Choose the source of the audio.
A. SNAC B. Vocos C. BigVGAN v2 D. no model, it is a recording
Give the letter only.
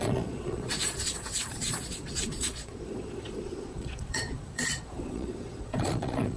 B